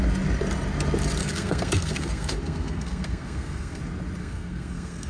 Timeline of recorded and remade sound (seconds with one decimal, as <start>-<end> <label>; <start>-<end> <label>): 0.0-1.2 recorded; 1.2-3.8 remade; 3.8-4.2 recorded; 4.2-5.1 remade